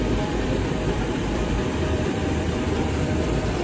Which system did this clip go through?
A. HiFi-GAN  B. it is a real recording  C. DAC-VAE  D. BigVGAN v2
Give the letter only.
D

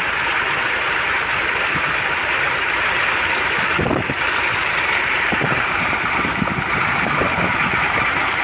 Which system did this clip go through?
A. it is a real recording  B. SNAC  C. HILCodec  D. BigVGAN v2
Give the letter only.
D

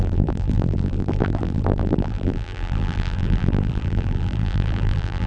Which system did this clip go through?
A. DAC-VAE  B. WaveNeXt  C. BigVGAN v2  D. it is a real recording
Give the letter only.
C